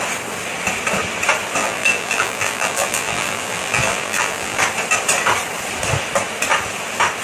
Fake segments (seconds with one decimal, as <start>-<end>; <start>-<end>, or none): 1.6-4.6